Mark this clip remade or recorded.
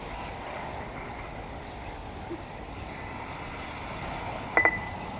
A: recorded